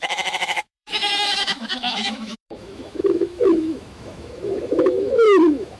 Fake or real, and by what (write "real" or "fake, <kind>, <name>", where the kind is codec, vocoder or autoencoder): fake, autoencoder, DAC-VAE